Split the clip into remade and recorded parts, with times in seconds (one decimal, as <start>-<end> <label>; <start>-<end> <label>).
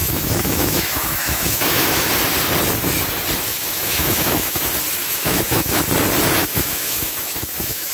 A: 0.0-2.1 remade; 2.1-3.5 recorded; 3.5-4.6 remade; 4.6-5.0 recorded; 5.0-5.8 remade; 5.8-6.4 recorded; 6.4-7.9 remade